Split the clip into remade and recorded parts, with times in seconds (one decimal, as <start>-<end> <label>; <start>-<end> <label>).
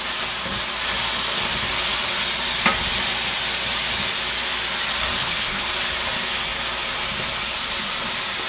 0.0-5.2 recorded; 5.2-5.7 remade; 5.7-8.5 recorded